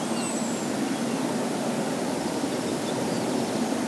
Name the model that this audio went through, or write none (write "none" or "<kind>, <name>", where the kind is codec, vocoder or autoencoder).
none